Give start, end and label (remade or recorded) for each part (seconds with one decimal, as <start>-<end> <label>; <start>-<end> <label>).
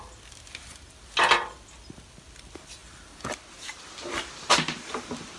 0.0-5.4 recorded